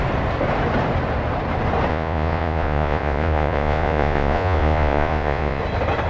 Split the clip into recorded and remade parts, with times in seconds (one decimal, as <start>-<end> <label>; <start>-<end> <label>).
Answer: 0.0-1.9 recorded; 1.9-5.6 remade; 5.6-6.1 recorded